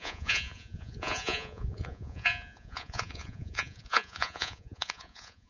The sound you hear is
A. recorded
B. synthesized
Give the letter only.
B